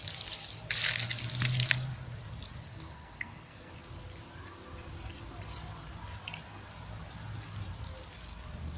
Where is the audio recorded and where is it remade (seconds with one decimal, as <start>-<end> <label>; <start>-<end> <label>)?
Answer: 0.0-2.7 recorded; 2.7-3.7 remade; 3.7-8.8 recorded

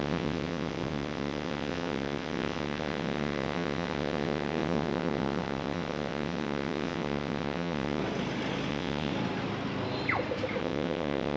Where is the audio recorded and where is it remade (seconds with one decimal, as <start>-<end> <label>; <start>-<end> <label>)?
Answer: 0.0-8.0 remade; 8.0-8.7 recorded; 8.7-9.1 remade; 9.1-10.6 recorded; 10.6-11.4 remade

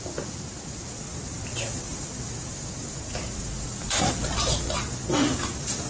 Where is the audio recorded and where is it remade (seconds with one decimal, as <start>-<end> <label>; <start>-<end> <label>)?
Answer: 0.0-1.9 recorded; 1.9-4.1 remade; 4.1-5.9 recorded

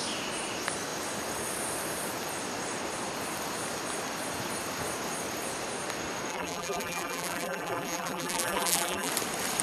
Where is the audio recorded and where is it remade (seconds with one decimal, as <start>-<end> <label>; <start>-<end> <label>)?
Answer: 0.0-6.3 recorded; 6.3-9.1 remade; 9.1-9.6 recorded

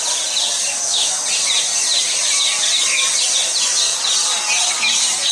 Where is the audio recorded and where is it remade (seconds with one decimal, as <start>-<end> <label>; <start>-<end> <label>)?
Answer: 0.0-0.7 recorded; 0.7-1.2 remade; 1.2-5.3 recorded

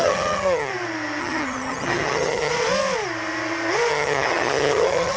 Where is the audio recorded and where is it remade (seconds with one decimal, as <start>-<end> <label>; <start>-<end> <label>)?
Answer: 0.0-0.7 remade; 0.7-1.2 recorded; 1.2-2.5 remade; 2.5-3.9 recorded; 3.9-5.2 remade

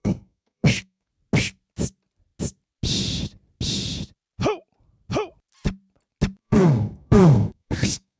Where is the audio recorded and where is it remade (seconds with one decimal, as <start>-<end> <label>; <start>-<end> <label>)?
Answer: 0.0-1.1 remade; 1.1-6.4 recorded; 6.4-8.2 remade

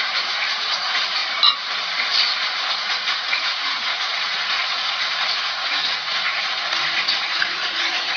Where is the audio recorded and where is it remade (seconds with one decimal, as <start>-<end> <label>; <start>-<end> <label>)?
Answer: 0.0-1.2 remade; 1.2-2.7 recorded; 2.7-8.2 remade